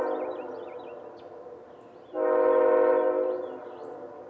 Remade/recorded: recorded